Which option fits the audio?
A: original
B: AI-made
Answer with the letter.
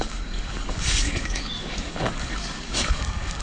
B